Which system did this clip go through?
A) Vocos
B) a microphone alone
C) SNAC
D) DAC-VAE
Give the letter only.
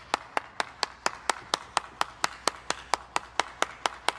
B